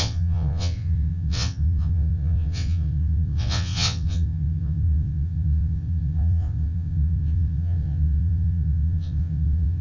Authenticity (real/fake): fake